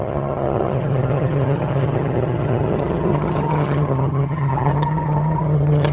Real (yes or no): no